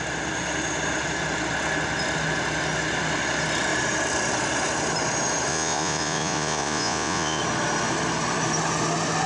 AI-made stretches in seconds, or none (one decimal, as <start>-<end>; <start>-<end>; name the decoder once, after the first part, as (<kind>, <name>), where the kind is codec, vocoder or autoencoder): 5.5-7.4 (vocoder, Vocos)